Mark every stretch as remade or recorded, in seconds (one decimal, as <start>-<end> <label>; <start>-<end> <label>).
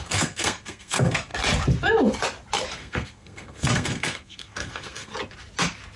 0.0-1.3 remade; 1.3-2.7 recorded; 2.7-5.1 remade; 5.1-6.0 recorded